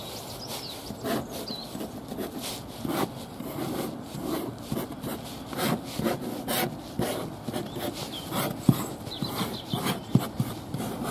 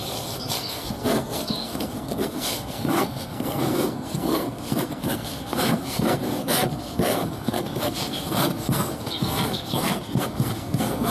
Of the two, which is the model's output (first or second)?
second